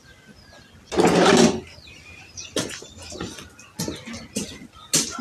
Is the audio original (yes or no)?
yes